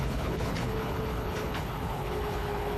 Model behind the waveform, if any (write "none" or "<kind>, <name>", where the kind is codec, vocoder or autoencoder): codec, HILCodec